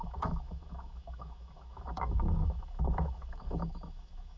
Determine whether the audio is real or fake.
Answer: fake